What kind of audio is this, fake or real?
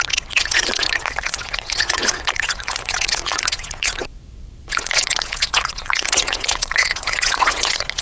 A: fake